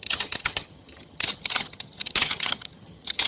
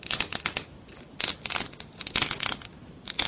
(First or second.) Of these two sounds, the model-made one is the first